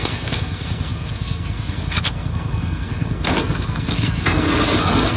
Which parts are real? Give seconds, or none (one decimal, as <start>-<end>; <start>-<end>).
none